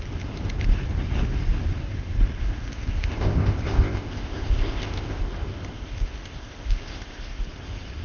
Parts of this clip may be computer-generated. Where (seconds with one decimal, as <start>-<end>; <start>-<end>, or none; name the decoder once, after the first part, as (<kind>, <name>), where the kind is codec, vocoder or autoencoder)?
2.4-5.2 (codec, ZipCodec); 5.7-7.4